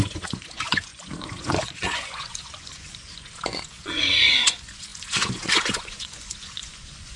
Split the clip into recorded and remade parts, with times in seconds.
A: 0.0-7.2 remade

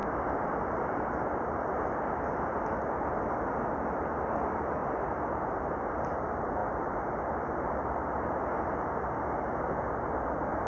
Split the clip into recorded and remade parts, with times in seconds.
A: 0.0-1.8 remade; 1.8-4.8 recorded; 4.8-5.4 remade; 5.4-6.6 recorded; 6.6-8.4 remade; 8.4-10.7 recorded